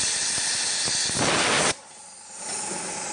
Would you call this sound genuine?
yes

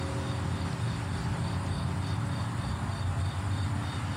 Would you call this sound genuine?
yes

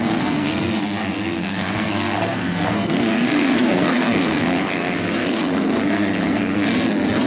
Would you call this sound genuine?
no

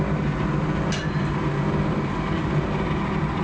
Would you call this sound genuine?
yes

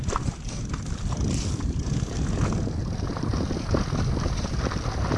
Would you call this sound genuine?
yes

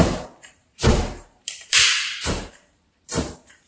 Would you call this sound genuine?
no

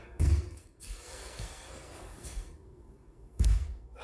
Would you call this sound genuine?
no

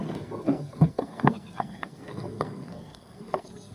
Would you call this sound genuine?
no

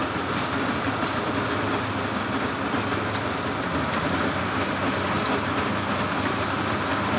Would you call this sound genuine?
yes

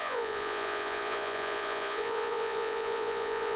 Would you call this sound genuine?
no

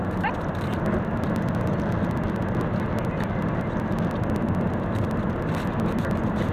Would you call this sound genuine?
yes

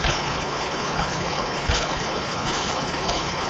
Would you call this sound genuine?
no